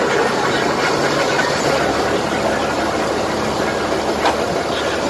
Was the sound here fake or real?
real